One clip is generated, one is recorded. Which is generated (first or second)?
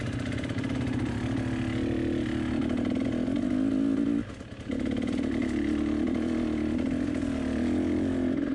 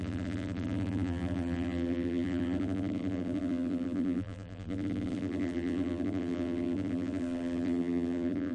second